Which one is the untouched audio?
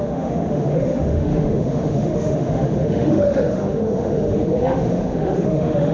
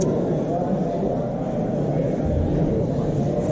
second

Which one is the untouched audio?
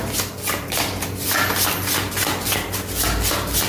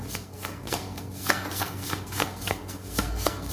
first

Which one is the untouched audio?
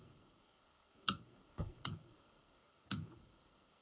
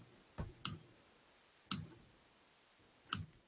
second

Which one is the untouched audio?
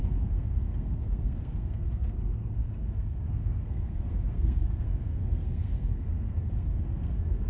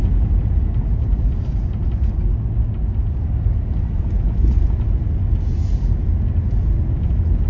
second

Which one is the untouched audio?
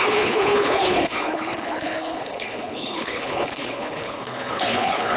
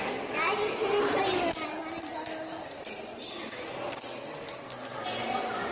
second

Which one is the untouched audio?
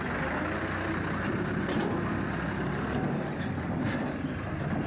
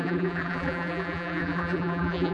first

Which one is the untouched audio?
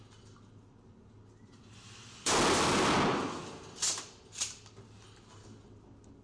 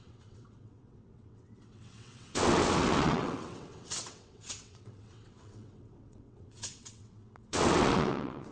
first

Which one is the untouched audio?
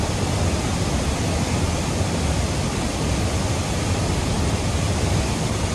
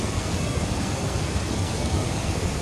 first